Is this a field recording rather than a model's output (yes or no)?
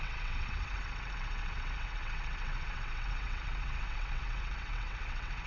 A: no